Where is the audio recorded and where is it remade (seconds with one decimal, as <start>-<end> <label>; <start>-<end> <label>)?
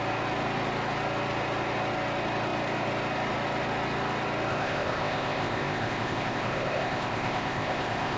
0.0-4.5 recorded; 4.5-8.2 remade